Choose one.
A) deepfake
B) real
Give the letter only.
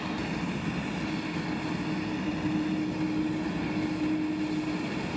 B